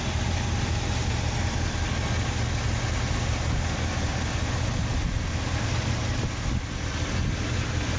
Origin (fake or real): real